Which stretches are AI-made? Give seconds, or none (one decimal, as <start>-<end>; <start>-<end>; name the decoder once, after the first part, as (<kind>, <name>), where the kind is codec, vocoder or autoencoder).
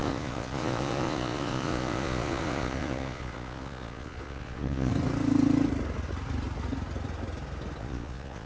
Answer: 0.0-4.9 (vocoder, Vocos); 7.8-8.5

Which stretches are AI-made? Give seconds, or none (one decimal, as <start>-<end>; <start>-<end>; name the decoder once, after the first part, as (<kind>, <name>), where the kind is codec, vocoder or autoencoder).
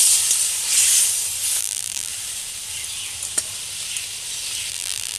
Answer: 1.6-2.1 (vocoder, BigVGAN v2); 4.7-5.2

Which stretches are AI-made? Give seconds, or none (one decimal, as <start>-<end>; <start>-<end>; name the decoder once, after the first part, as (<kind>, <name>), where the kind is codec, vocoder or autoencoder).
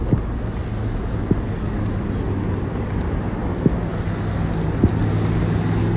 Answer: none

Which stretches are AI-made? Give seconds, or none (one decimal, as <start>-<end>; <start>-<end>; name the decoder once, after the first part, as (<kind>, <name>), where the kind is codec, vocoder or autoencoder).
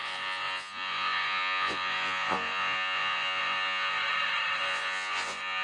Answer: 0.0-4.0 (vocoder, Vocos); 4.6-5.6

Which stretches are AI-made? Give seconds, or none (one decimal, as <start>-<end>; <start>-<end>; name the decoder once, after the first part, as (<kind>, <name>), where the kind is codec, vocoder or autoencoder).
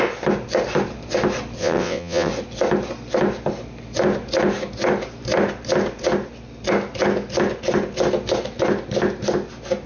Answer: 1.6-2.3 (vocoder, WaveNeXt)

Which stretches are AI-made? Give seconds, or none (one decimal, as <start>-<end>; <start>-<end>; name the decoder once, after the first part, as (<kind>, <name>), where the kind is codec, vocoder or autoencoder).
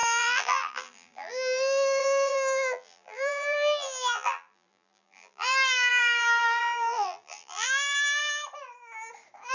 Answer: 0.0-8.2 (vocoder, BigVGAN v2)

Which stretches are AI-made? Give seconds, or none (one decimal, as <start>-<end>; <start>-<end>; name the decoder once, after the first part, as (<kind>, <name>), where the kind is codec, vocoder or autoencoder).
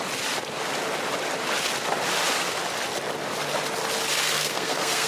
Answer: 4.2-5.1 (codec, SNAC)